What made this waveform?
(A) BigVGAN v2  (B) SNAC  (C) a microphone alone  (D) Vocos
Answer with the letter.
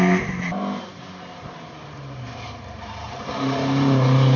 A